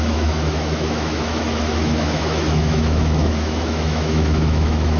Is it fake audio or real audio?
fake